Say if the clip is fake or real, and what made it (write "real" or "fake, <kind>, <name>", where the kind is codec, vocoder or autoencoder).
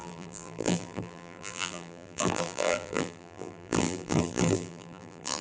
fake, vocoder, BigVGAN v2